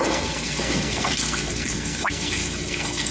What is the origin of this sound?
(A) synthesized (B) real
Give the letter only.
A